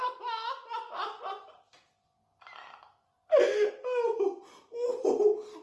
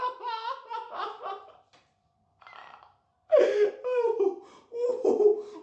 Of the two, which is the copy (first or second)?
second